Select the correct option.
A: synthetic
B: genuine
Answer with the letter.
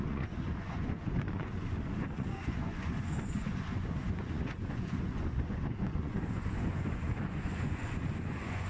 A